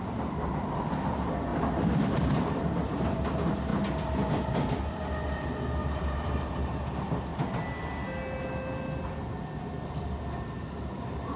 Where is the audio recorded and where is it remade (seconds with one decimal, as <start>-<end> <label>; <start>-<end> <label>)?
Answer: 0.0-1.5 recorded; 1.5-3.2 remade; 3.2-5.8 recorded; 5.8-6.5 remade; 6.5-11.4 recorded